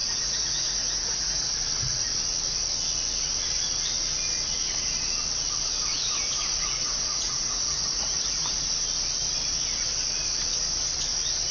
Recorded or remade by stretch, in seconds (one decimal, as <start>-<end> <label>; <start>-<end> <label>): 0.0-1.5 remade; 1.5-5.9 recorded; 5.9-8.7 remade; 8.7-11.5 recorded